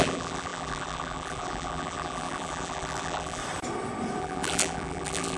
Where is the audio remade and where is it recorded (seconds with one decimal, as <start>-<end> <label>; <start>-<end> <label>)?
0.0-3.4 remade; 3.4-4.2 recorded; 4.2-5.4 remade